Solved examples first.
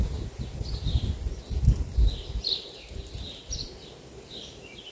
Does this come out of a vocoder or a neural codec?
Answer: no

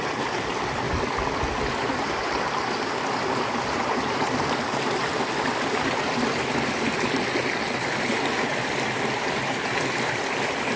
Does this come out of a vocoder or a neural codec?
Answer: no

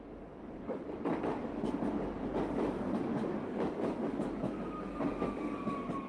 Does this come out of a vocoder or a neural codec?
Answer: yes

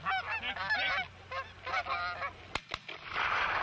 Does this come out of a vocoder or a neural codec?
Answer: no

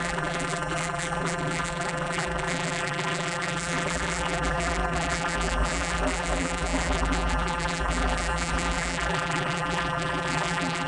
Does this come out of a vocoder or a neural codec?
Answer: yes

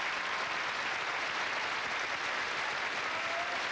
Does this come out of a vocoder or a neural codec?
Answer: no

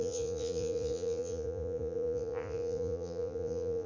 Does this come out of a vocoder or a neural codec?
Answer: yes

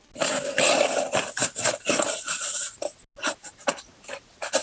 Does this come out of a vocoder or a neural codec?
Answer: no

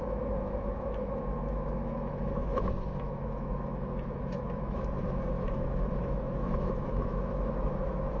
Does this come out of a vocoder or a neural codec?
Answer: yes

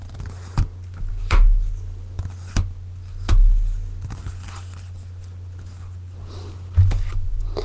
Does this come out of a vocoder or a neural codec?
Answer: no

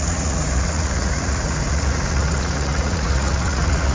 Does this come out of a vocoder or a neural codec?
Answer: yes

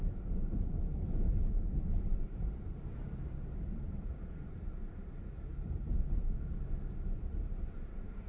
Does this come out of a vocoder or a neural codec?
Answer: yes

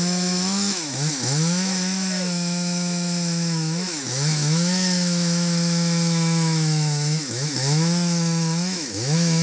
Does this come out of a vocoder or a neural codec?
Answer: yes